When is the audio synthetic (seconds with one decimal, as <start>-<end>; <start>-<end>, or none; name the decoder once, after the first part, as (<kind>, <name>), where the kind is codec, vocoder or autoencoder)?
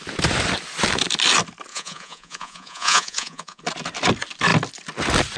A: 1.7-3.6 (vocoder, Vocos)